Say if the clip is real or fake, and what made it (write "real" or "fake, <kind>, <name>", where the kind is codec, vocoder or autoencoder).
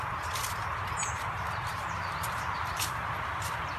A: fake, vocoder, BigVGAN v2